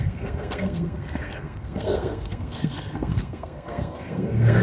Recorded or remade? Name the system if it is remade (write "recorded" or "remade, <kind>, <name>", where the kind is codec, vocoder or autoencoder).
remade, codec, SNAC